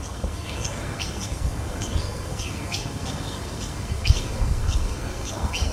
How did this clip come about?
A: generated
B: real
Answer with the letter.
A